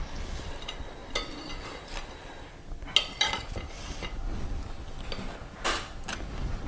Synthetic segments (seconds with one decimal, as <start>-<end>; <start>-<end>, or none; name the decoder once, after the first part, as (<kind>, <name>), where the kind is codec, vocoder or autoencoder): none